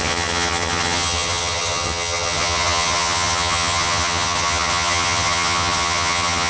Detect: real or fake fake